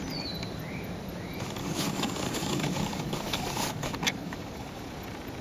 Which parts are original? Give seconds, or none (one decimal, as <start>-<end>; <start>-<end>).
0.0-1.6; 4.8-5.4